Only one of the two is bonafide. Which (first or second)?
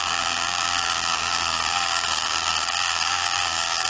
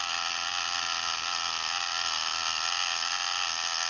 second